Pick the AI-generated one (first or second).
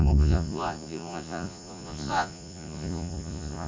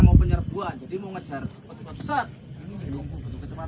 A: first